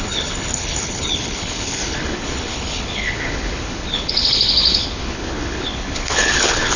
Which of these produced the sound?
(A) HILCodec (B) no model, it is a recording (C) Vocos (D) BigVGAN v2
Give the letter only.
A